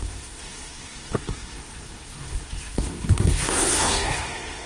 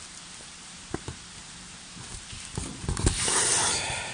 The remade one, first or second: first